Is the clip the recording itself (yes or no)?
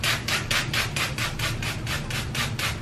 yes